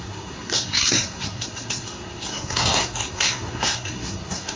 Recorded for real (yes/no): no